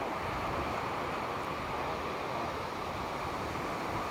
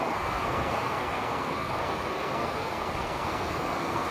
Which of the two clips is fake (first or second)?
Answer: second